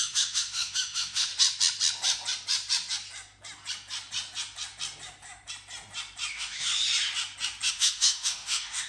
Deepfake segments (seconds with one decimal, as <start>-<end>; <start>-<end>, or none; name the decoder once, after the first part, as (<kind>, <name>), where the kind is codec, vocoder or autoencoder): 0.0-1.3 (autoencoder, DAC-VAE); 6.3-6.7; 7.7-8.9